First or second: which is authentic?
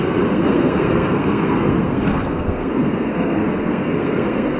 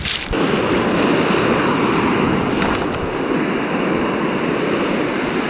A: second